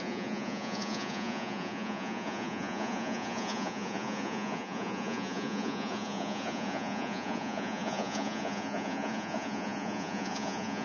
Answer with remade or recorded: remade